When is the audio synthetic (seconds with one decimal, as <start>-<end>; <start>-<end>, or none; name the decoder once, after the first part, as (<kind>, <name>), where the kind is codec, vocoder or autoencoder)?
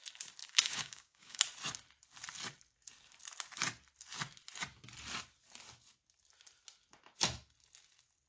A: 0.4-1.4 (codec, DAC)